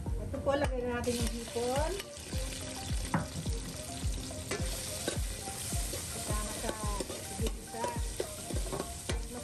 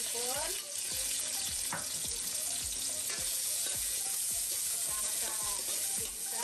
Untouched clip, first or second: first